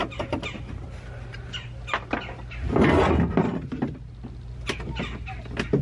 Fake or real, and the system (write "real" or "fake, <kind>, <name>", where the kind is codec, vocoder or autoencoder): real